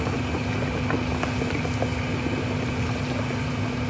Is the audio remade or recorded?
recorded